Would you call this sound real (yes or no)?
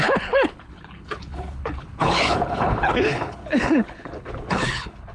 no